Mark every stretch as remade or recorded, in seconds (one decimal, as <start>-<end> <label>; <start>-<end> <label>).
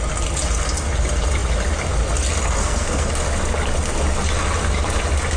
0.0-2.6 recorded; 2.6-3.1 remade; 3.1-5.4 recorded